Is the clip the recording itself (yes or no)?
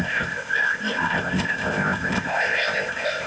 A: no